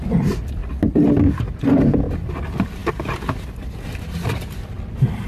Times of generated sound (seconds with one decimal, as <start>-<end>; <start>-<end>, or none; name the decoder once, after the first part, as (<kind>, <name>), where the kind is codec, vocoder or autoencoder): none